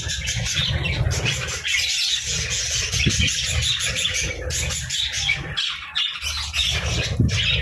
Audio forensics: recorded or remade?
recorded